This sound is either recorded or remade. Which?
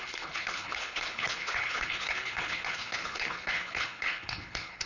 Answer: remade